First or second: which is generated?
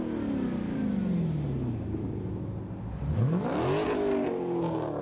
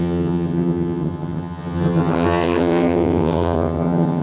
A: second